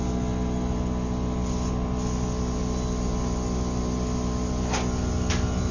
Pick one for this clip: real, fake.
real